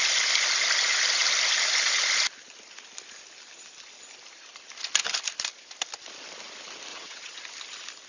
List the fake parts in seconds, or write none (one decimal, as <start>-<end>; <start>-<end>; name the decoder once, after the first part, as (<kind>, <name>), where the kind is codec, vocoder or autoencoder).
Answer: 6.9-7.4 (vocoder, WaveNeXt)